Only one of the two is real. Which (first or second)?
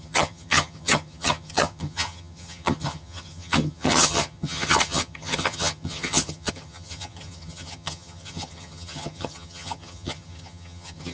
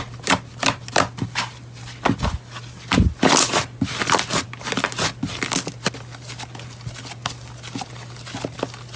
second